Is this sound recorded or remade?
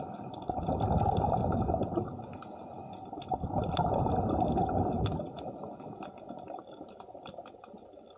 recorded